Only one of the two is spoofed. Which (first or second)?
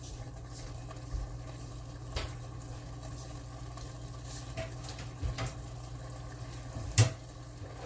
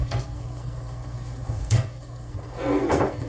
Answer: second